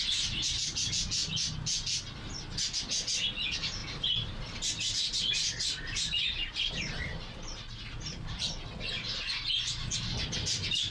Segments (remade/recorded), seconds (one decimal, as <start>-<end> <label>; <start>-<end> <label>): 0.0-10.9 recorded